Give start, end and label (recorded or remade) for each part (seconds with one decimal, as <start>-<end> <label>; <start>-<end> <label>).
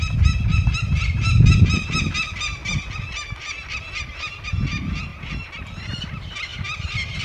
0.0-7.2 recorded